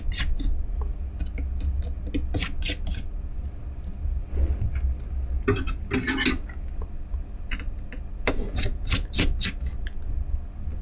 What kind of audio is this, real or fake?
real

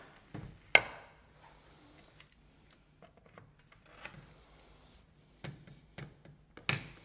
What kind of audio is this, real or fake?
real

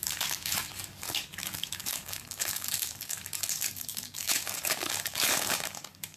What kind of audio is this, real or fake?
fake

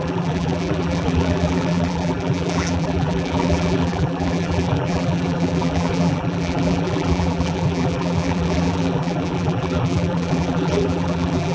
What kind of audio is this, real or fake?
fake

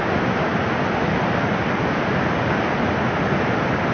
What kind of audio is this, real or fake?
real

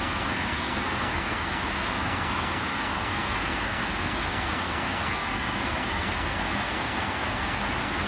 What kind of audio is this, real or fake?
fake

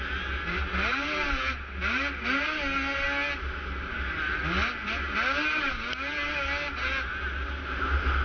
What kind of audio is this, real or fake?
real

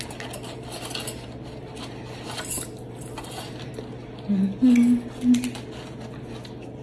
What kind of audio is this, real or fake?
real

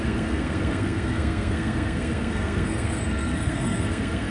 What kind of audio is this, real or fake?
fake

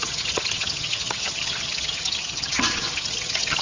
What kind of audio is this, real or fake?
fake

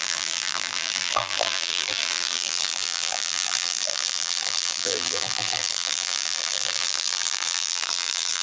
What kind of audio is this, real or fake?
fake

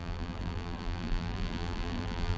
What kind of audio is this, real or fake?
fake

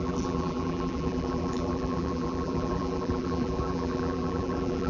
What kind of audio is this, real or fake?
fake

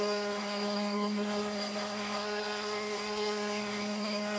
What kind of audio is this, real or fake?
fake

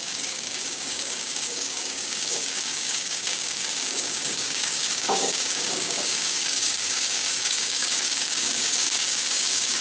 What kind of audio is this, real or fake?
fake